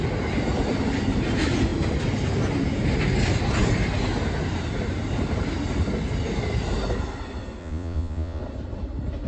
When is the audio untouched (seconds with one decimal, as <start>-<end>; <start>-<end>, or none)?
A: 0.0-7.6; 8.4-9.3